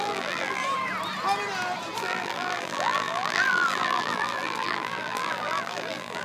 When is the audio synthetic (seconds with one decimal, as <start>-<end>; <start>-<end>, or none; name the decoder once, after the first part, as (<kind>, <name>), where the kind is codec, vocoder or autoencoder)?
0.0-0.6 (vocoder, BigVGAN v2); 2.0-6.2